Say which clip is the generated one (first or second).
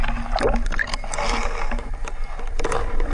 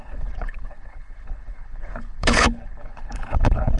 second